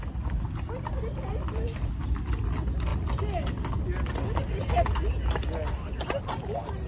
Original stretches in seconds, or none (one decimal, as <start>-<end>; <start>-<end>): 0.0-6.9